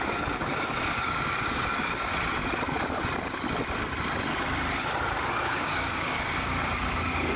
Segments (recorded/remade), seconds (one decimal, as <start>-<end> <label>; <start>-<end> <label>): 0.0-2.1 remade; 2.1-5.5 recorded; 5.5-7.4 remade